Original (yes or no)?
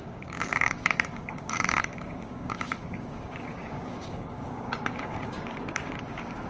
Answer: no